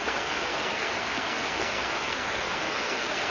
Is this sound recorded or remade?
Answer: remade